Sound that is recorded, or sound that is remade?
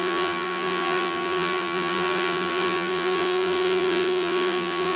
remade